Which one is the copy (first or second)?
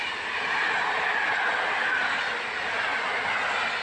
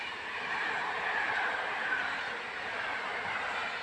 second